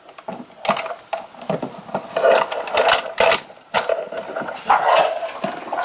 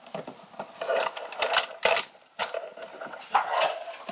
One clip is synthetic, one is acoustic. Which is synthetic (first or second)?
second